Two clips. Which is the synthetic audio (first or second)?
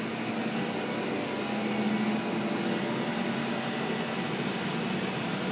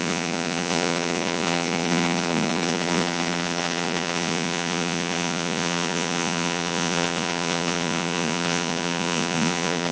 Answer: second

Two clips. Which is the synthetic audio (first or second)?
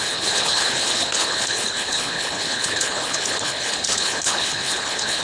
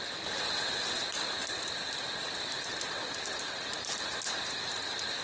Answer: first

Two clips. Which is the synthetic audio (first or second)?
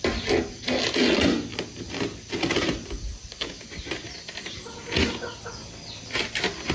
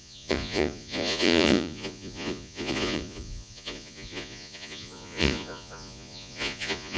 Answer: second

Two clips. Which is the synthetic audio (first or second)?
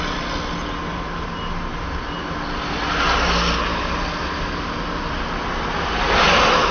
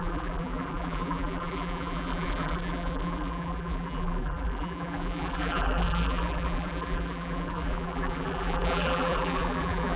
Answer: second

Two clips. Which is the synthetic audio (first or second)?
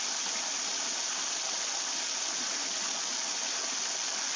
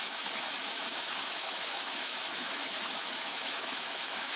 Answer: second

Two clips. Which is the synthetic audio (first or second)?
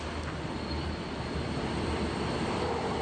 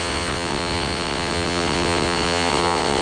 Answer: second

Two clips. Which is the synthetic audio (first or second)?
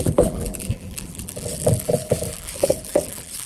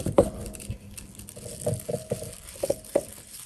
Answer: first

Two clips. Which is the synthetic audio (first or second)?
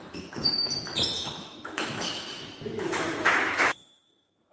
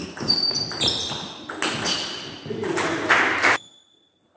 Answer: first